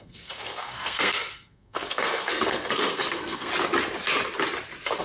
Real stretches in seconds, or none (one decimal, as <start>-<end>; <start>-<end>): 3.5-5.0